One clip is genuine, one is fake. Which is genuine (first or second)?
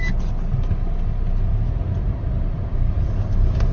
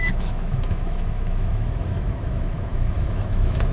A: first